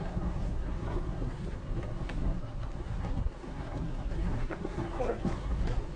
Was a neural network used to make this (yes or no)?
yes